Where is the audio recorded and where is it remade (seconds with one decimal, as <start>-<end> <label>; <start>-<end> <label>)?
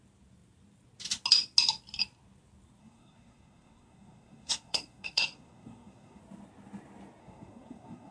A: 0.0-2.8 recorded; 2.8-6.2 remade; 6.2-7.2 recorded; 7.2-8.1 remade